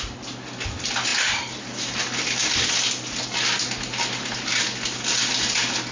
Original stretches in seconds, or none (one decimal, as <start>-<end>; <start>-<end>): 0.0-5.9